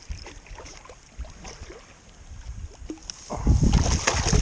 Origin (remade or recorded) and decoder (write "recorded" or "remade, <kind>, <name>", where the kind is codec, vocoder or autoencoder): recorded